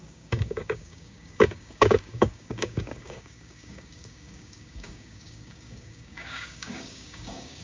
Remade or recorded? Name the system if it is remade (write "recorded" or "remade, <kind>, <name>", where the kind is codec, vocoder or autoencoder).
remade, codec, DAC